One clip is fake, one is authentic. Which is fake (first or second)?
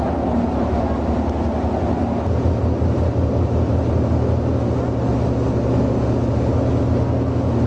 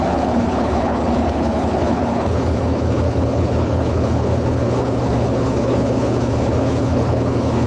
second